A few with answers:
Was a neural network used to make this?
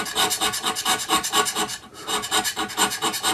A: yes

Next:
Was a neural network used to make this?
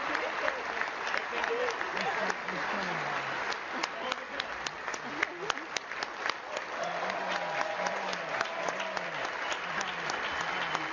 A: no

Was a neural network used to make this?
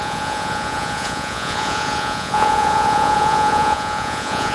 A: yes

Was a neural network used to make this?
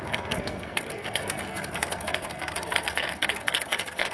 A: yes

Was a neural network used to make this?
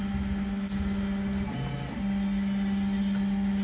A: no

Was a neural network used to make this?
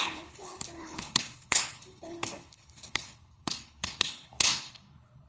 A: yes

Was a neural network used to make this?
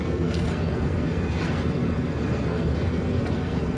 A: yes